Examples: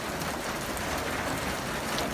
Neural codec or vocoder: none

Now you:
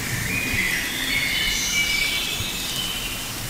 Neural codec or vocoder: none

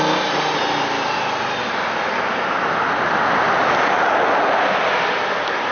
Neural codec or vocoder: none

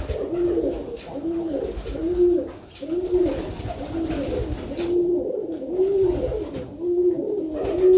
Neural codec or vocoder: none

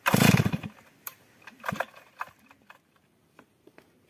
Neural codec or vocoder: vocoder, BigVGAN v2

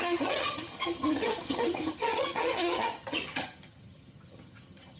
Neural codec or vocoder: vocoder, HiFi-GAN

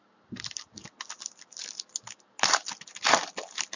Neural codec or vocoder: none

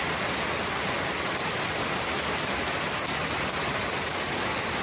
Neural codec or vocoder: none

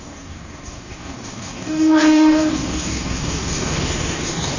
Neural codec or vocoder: codec, DAC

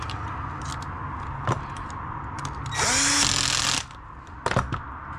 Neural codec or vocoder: none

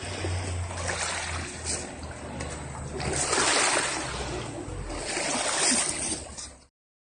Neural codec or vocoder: none